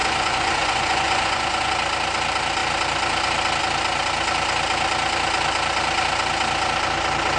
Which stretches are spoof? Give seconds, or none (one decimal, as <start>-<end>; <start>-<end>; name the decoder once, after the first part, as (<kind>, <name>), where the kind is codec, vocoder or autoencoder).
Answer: 0.0-1.7 (vocoder, Vocos)